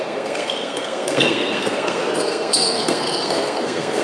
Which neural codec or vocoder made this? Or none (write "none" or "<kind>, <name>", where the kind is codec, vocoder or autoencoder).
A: codec, SNAC